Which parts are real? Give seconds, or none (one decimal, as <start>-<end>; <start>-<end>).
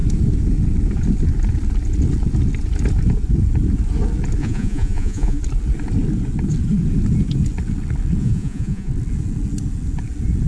0.0-4.4; 5.4-8.2; 8.9-10.5